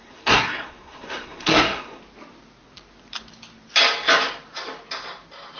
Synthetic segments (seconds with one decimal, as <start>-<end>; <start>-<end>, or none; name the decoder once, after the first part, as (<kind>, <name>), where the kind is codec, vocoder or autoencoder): 0.0-2.0 (codec, SNAC)